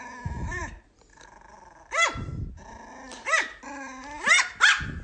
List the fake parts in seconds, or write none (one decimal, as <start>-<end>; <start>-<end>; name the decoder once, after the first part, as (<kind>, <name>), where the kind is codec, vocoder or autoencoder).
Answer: none